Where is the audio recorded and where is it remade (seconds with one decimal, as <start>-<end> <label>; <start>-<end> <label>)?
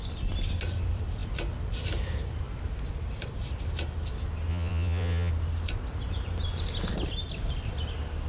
0.0-4.5 recorded; 4.5-5.3 remade; 5.3-8.3 recorded